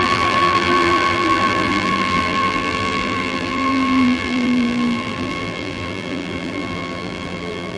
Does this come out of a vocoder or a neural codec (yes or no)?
yes